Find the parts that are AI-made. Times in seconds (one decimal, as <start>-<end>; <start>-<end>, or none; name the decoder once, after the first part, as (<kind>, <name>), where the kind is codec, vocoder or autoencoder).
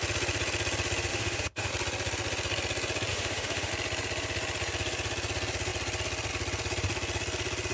1.1-1.7 (autoencoder, DAC-VAE); 3.1-3.7